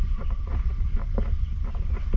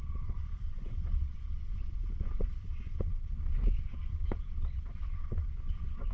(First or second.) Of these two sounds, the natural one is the first